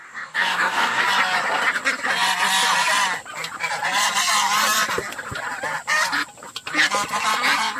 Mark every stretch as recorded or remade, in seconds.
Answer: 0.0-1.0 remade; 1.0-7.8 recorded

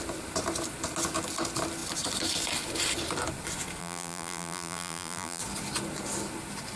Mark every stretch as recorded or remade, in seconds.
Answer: 0.0-3.8 recorded; 3.8-5.4 remade; 5.4-6.8 recorded

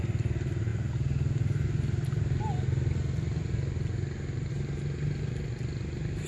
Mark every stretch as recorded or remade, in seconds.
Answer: 0.0-6.3 recorded

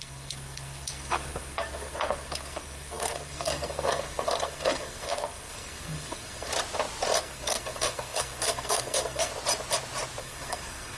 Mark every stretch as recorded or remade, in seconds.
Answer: 0.0-6.5 remade; 6.5-7.2 recorded; 7.2-9.3 remade; 9.3-10.2 recorded; 10.2-11.0 remade

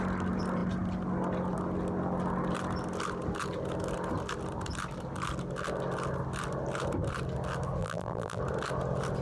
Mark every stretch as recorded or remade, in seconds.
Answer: 0.0-7.8 recorded; 7.8-8.4 remade; 8.4-9.2 recorded

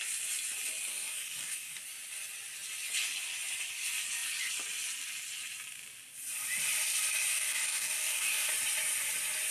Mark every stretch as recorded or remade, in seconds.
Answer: 0.0-0.9 recorded; 0.9-1.8 remade; 1.8-7.3 recorded; 7.3-8.5 remade; 8.5-9.5 recorded

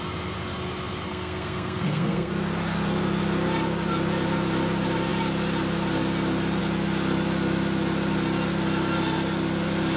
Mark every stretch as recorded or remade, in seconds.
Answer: 0.0-1.1 recorded; 1.1-2.3 remade; 2.3-10.0 recorded